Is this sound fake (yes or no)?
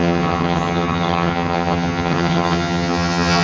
yes